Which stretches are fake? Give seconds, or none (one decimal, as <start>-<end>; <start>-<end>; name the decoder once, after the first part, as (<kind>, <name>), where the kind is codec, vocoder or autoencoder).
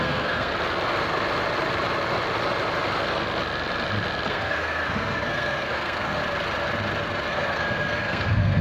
0.0-0.5 (codec, SNAC); 4.3-6.2; 7.3-8.6